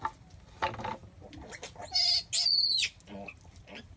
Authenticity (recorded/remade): recorded